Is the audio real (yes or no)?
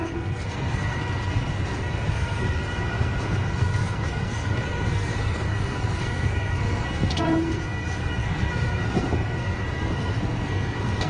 no